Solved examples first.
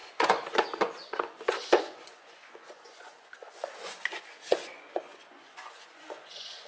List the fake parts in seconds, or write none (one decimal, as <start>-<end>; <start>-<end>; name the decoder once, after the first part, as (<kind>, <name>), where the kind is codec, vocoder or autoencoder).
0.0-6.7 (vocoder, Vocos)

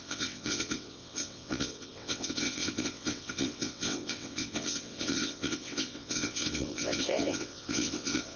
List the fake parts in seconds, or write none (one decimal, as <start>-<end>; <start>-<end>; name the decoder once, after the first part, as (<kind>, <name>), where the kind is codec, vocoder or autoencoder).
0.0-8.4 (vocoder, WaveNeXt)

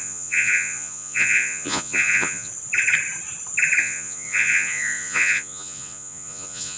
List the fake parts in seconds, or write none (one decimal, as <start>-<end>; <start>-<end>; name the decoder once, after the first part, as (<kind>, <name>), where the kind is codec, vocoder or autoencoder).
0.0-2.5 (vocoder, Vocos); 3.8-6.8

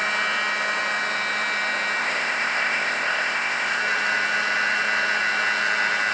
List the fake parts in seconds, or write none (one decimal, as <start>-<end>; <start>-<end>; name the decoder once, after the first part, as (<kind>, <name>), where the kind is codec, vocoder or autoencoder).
2.0-3.8 (codec, ZipCodec)

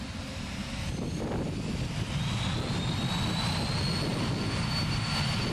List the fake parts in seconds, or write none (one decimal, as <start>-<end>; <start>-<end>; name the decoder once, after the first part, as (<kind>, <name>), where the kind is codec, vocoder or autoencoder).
none